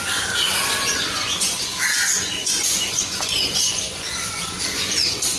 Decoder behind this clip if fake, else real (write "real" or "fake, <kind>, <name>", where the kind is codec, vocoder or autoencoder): fake, vocoder, Vocos